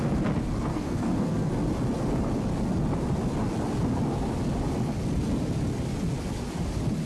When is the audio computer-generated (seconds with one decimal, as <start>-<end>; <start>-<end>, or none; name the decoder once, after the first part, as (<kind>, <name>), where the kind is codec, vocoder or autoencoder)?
0.7-1.5 (codec, SNAC)